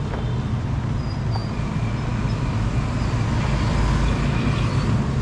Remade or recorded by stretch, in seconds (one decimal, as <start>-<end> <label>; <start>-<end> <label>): 0.0-5.2 recorded

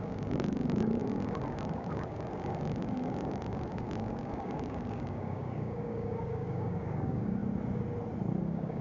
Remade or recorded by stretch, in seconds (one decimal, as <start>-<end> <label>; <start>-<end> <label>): 0.0-7.4 remade; 7.4-8.4 recorded; 8.4-8.8 remade

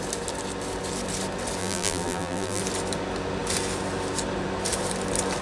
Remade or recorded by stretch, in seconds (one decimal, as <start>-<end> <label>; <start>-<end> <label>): 0.0-1.6 recorded; 1.6-2.6 remade; 2.6-5.4 recorded